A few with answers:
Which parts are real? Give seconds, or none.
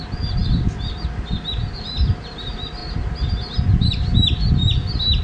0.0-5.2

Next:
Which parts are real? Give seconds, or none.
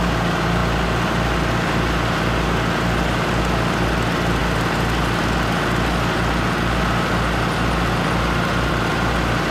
0.0-9.5